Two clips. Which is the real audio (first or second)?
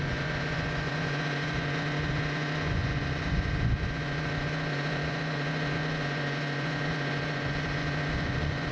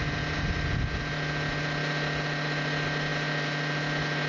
second